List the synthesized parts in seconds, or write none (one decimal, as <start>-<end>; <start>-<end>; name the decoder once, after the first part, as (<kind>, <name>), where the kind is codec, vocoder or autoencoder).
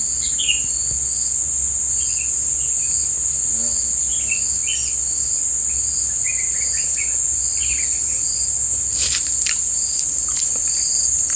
none